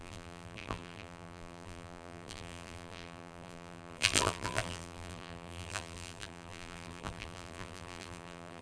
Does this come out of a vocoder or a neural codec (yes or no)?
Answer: yes